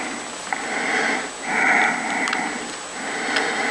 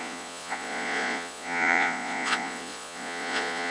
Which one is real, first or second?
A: first